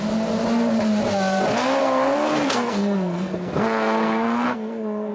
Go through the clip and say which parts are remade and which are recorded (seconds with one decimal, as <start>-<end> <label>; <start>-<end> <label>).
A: 0.0-1.8 recorded; 1.8-5.1 remade